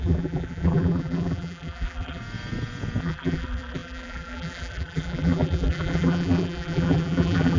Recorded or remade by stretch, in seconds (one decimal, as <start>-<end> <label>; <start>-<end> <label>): 0.0-2.2 remade; 2.2-3.0 recorded; 3.0-7.6 remade